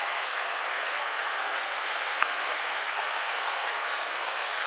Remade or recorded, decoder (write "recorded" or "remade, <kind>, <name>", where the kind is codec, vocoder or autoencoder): remade, codec, SNAC